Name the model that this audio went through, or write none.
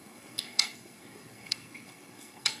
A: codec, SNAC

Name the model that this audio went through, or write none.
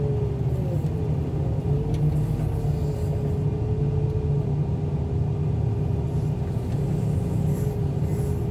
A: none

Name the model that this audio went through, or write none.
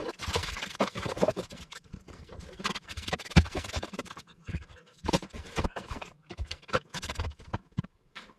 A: codec, SNAC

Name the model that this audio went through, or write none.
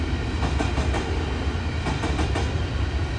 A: none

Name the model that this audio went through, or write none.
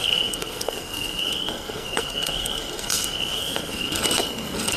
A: codec, SNAC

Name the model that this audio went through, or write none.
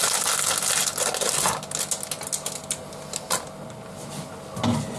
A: none